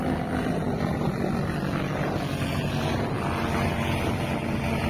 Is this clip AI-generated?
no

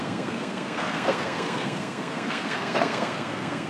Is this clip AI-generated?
yes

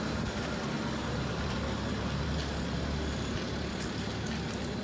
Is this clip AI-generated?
no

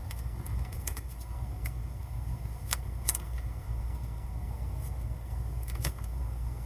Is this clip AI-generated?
yes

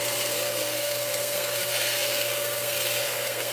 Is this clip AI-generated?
yes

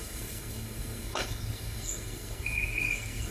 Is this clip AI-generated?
yes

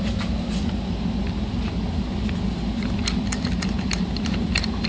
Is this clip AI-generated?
no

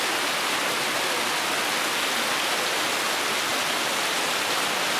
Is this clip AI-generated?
no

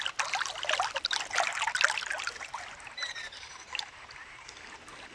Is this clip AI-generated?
no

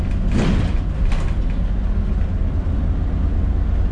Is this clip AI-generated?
no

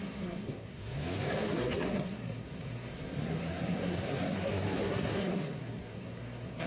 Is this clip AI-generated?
yes